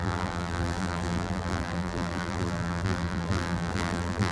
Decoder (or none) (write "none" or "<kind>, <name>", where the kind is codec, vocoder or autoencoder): vocoder, BigVGAN v2